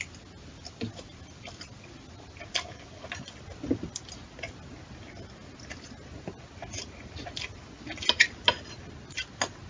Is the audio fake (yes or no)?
no